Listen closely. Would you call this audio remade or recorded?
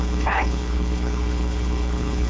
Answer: remade